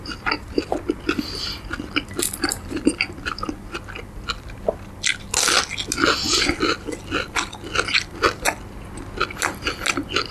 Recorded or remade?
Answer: recorded